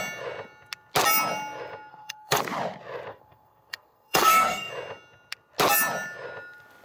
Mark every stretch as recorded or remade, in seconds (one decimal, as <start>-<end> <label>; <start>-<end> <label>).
0.0-1.9 recorded; 1.9-2.4 remade; 2.4-3.1 recorded; 3.1-4.7 remade; 4.7-6.8 recorded

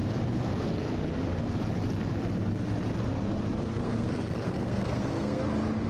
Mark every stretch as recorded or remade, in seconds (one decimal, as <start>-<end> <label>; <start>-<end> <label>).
0.0-3.7 recorded; 3.7-5.4 remade; 5.4-5.9 recorded

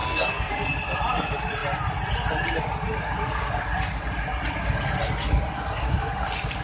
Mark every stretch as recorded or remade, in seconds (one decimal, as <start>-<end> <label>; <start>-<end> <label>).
0.0-0.5 remade; 0.5-6.6 recorded

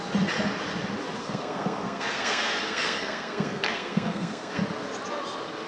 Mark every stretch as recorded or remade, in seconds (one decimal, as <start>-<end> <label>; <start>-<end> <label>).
0.0-1.2 recorded; 1.2-4.6 remade; 4.6-5.7 recorded

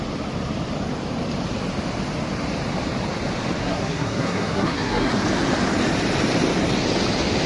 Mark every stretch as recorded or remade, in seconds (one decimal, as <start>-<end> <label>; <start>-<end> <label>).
0.0-3.6 recorded; 3.6-5.1 remade; 5.1-7.5 recorded

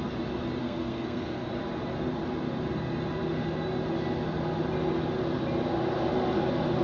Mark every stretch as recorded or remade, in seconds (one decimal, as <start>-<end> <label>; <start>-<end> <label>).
0.0-0.6 recorded; 0.6-1.5 remade; 1.5-6.8 recorded

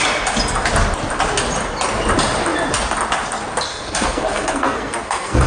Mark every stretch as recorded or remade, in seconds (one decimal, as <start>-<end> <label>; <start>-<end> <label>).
0.0-3.7 recorded; 3.7-5.5 remade